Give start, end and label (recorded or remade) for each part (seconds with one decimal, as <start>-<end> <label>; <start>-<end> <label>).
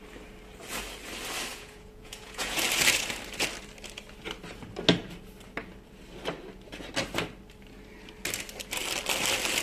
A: 0.0-1.5 recorded; 1.5-2.6 remade; 2.6-9.6 recorded